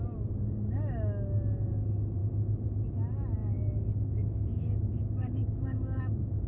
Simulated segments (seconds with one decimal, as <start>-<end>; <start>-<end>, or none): 3.4-6.0